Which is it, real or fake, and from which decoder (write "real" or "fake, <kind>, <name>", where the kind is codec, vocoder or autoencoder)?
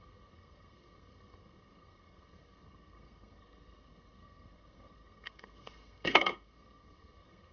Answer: fake, codec, SNAC